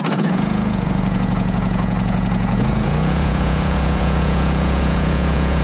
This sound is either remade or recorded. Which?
remade